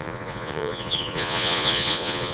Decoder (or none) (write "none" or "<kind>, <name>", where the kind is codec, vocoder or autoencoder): vocoder, Vocos